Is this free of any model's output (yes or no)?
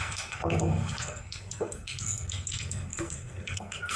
no